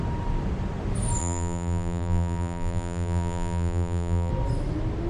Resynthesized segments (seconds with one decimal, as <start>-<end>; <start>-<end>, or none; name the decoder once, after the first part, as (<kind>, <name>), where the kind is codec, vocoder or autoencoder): 1.2-4.3 (vocoder, BigVGAN v2)